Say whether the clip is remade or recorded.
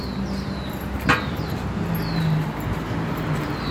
recorded